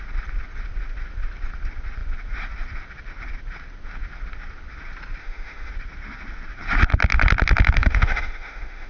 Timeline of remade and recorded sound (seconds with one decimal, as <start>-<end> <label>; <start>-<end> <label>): 0.0-5.2 recorded; 5.2-5.7 remade; 5.7-7.8 recorded; 7.8-8.9 remade